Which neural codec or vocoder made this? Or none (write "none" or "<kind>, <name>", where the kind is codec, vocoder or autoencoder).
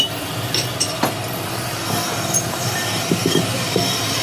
none